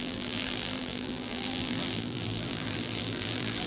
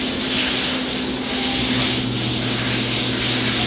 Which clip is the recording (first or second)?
second